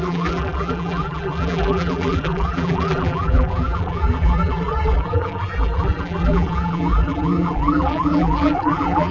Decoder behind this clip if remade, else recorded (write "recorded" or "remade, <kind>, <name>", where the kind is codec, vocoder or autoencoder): remade, vocoder, BigVGAN v2